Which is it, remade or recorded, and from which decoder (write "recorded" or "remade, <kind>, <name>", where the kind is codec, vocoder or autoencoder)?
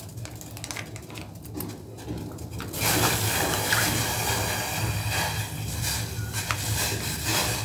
recorded